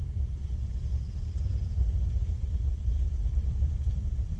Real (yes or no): yes